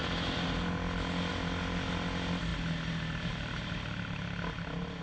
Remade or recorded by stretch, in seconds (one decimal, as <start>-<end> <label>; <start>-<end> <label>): 0.0-5.0 recorded